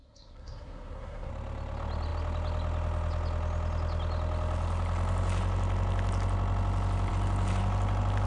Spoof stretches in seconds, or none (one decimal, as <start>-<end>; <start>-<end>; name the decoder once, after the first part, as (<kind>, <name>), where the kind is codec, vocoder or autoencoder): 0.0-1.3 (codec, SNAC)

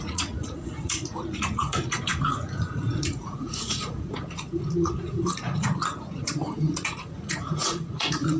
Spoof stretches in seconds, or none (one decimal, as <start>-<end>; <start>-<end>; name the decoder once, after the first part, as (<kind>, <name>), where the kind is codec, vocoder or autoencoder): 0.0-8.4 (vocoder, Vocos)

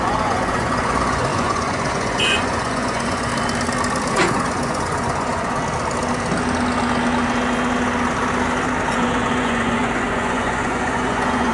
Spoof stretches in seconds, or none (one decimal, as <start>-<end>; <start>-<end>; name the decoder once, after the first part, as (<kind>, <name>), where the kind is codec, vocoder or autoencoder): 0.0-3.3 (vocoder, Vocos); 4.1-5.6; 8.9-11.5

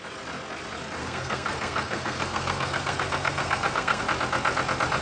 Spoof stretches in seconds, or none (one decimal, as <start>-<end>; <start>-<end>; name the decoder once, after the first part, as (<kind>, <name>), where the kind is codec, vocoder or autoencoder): 1.0-4.0 (codec, SNAC)